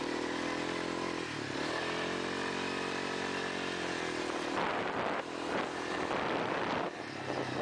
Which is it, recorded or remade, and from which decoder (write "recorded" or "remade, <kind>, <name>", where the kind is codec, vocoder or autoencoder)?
recorded